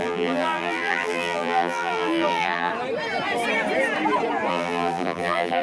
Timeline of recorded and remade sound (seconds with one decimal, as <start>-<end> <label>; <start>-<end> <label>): 0.0-2.7 remade; 2.7-4.5 recorded; 4.5-5.6 remade